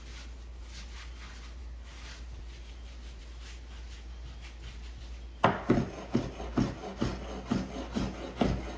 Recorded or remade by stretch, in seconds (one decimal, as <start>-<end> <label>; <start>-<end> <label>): 0.0-8.8 recorded